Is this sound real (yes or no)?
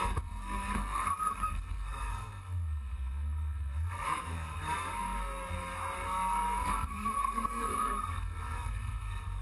no